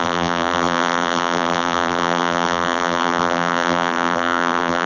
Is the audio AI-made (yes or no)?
yes